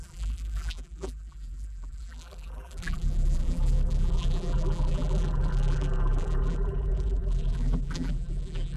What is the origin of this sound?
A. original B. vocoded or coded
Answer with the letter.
B